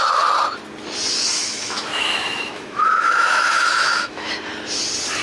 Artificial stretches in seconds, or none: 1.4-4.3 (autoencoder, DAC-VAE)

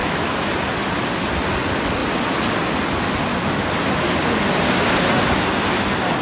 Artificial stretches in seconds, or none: 0.0-0.5 (autoencoder, DAC-VAE)